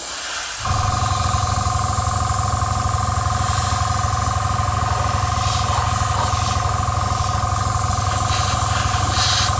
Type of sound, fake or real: real